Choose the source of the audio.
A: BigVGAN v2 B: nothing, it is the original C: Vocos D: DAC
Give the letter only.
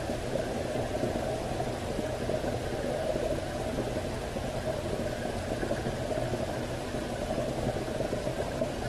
B